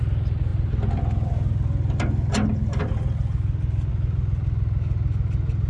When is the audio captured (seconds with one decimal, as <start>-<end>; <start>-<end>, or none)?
0.0-5.7